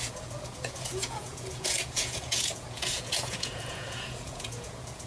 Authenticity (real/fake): fake